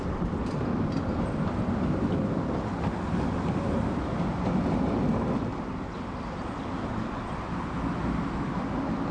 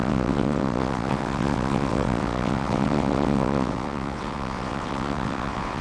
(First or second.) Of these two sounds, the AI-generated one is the second